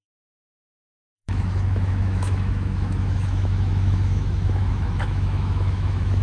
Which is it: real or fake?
fake